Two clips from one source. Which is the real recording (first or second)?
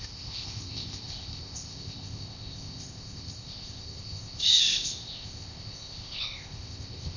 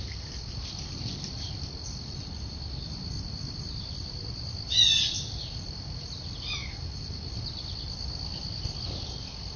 second